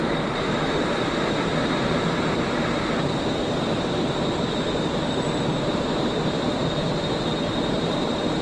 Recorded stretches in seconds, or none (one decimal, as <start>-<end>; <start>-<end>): 6.6-7.5